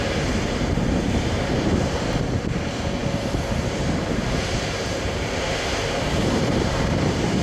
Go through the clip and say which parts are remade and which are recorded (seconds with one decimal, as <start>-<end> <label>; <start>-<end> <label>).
0.0-7.4 remade